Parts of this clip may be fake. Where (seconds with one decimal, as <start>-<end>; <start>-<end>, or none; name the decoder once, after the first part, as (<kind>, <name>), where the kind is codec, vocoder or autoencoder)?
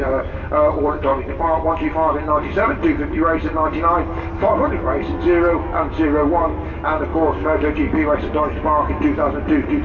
7.1-7.7 (codec, DAC)